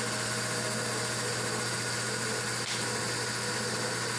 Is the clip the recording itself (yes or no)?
yes